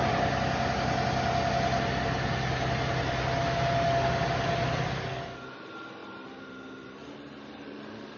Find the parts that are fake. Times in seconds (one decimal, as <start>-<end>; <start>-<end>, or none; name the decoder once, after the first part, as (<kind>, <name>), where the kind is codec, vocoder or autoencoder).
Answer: none